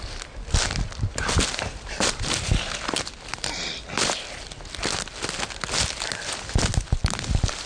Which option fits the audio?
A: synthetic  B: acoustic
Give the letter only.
B